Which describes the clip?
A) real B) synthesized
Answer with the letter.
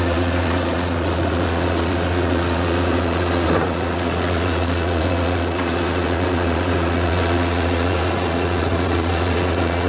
B